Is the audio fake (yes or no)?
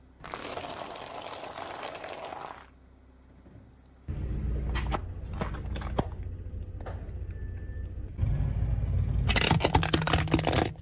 no